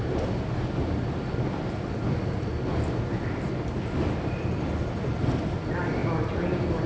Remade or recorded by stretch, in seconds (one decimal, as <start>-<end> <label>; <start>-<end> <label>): 0.0-6.9 recorded